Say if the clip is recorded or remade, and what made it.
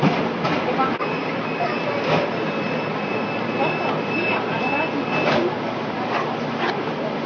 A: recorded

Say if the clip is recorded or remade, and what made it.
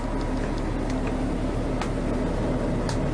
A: recorded